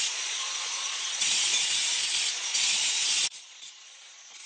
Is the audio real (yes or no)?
no